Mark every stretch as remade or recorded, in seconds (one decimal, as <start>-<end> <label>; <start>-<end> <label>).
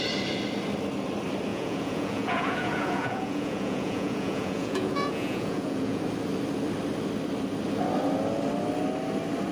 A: 0.0-1.5 recorded; 1.5-6.0 remade; 6.0-9.5 recorded